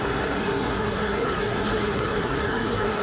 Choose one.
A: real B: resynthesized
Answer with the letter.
B